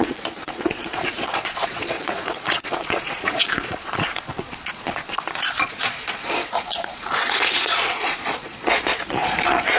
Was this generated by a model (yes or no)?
yes